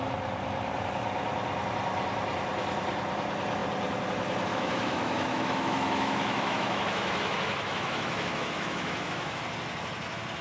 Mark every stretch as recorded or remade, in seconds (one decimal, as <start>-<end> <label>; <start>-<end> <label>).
0.0-4.5 recorded; 4.5-9.4 remade; 9.4-10.4 recorded